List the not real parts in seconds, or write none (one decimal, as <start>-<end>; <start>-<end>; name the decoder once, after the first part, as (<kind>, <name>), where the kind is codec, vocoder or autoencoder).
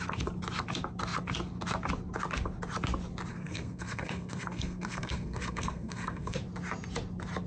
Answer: 3.3-6.4 (codec, SNAC)